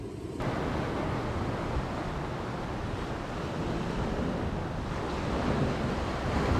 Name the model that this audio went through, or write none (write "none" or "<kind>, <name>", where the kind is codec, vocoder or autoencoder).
none